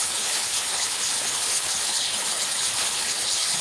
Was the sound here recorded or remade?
remade